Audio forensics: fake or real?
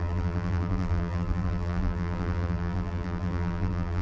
fake